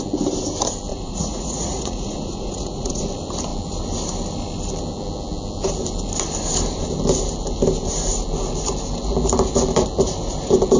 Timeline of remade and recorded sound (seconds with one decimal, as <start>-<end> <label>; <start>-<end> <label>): 0.0-0.9 recorded; 0.9-3.0 remade; 3.0-10.8 recorded